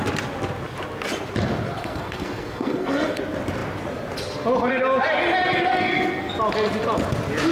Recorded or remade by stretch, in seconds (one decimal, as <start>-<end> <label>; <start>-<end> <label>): 0.0-1.8 recorded; 1.8-3.2 remade; 3.2-5.7 recorded; 5.7-6.3 remade; 6.3-7.5 recorded